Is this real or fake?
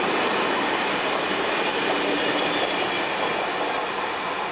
real